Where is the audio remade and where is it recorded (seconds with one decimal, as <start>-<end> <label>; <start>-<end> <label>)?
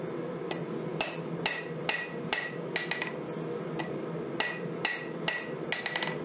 0.0-6.2 recorded